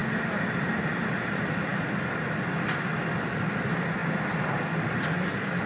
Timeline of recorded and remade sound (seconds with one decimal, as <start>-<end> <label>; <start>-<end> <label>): 0.0-5.7 recorded